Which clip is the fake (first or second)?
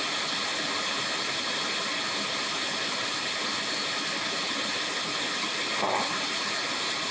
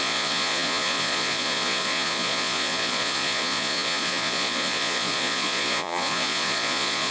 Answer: second